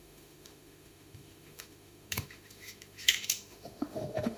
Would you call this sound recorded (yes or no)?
no